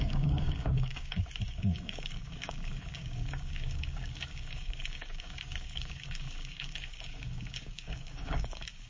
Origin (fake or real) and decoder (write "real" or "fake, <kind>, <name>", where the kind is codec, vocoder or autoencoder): fake, codec, DAC